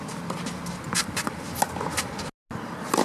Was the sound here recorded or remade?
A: recorded